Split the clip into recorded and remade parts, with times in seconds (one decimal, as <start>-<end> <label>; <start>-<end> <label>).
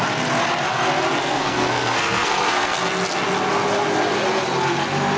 0.0-1.2 recorded; 1.2-2.9 remade; 2.9-5.2 recorded